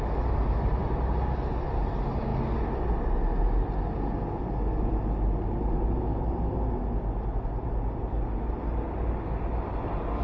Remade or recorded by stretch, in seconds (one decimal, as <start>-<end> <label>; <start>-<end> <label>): 0.0-10.2 recorded